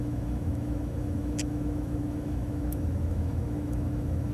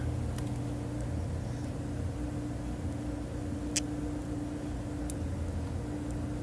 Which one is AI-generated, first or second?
first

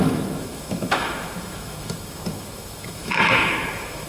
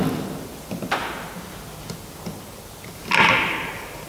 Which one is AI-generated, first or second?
first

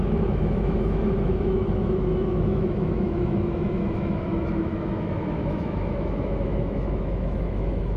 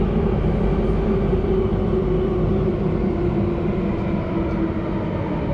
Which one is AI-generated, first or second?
first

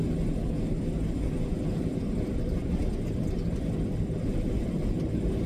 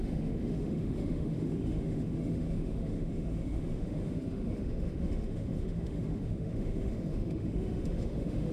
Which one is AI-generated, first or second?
second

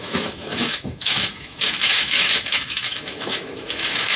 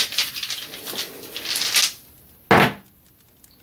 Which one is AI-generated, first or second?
first